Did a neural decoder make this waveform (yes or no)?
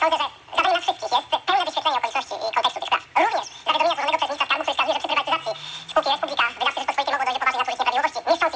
no